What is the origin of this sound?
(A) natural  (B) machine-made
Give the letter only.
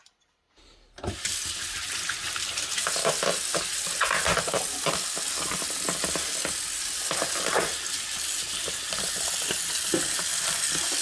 A